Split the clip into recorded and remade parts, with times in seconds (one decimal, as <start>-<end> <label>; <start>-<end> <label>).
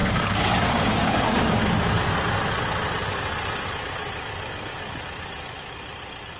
0.0-1.7 remade; 1.7-6.4 recorded